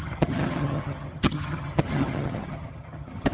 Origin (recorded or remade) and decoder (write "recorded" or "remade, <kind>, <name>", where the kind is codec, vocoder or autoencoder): remade, vocoder, HiFi-GAN